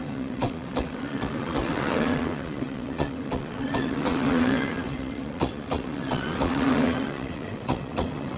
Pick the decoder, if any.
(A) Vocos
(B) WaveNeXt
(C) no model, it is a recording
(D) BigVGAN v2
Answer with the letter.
B